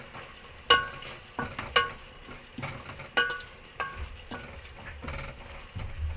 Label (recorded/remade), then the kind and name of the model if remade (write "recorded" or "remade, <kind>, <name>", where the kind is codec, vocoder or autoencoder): recorded